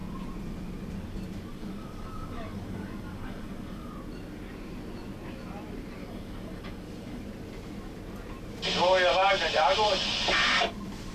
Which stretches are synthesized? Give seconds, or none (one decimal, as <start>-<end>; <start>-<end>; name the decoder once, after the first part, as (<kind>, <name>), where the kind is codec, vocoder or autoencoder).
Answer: 1.5-3.9 (codec, DAC); 6.0-7.2

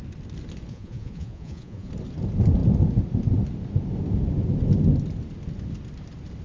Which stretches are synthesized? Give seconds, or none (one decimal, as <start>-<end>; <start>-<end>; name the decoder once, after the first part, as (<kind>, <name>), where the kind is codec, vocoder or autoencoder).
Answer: 0.7-1.9 (vocoder, Vocos)

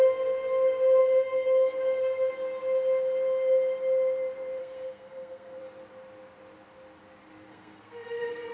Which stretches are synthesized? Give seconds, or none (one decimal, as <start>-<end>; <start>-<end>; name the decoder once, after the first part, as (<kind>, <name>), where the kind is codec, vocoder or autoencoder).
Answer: 1.0-2.3 (codec, SNAC); 4.6-5.6; 7.5-8.5